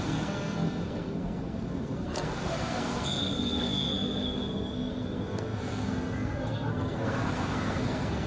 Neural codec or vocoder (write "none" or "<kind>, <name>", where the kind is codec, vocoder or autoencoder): codec, SNAC